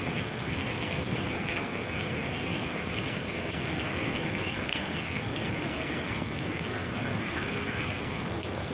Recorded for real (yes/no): no